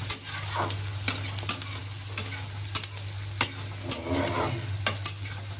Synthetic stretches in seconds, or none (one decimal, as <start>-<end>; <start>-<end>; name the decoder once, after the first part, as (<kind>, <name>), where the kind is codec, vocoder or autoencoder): none